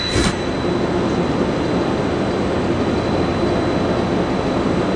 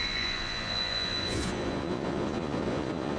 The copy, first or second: second